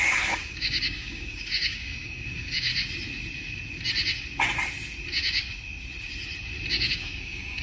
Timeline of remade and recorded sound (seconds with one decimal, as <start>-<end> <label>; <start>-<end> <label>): 0.0-2.7 remade; 2.7-6.9 recorded; 6.9-7.6 remade

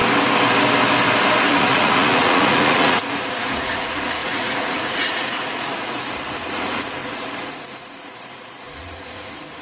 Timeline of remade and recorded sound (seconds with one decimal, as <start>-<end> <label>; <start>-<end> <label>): 0.0-1.5 recorded; 1.5-9.6 remade